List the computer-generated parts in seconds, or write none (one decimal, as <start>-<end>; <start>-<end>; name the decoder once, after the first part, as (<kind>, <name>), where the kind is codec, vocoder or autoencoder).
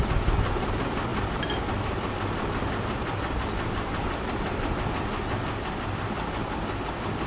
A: none